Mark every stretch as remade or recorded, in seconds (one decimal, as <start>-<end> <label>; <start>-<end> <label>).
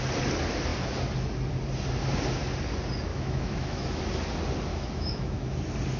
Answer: 0.0-3.1 recorded; 3.1-4.0 remade; 4.0-4.7 recorded; 4.7-5.6 remade; 5.6-6.0 recorded